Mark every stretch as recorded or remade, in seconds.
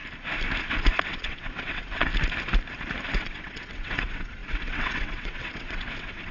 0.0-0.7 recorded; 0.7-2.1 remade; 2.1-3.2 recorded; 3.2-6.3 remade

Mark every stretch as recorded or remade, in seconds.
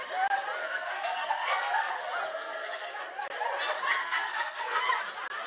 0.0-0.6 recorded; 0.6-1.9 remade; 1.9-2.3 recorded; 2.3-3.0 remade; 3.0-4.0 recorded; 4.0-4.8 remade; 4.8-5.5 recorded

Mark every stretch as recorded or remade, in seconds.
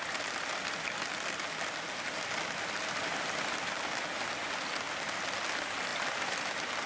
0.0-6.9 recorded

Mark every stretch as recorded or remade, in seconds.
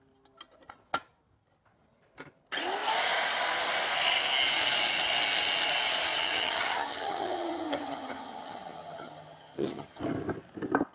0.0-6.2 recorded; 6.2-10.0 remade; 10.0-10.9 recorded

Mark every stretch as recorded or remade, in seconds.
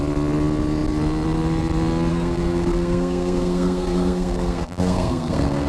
0.0-2.1 recorded; 2.1-5.7 remade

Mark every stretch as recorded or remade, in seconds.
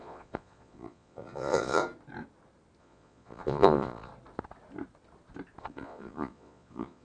0.0-1.8 remade; 1.8-2.8 recorded; 2.8-4.1 remade; 4.1-5.6 recorded; 5.6-7.0 remade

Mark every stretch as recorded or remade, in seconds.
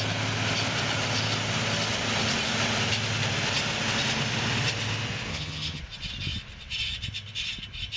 0.0-5.3 recorded; 5.3-5.8 remade; 5.8-8.0 recorded